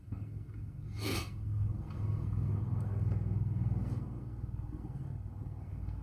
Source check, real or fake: fake